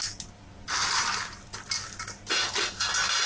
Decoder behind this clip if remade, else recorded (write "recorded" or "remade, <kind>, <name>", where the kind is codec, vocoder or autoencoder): recorded